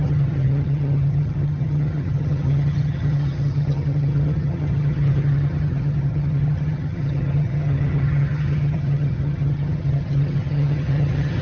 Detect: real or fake fake